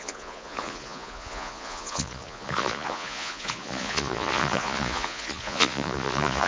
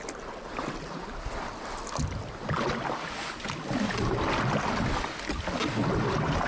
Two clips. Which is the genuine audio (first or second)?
second